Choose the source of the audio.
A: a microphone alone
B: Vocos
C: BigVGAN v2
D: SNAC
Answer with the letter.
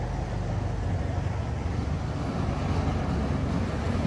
A